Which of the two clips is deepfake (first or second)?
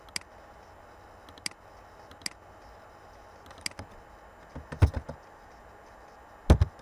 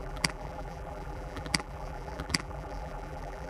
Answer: second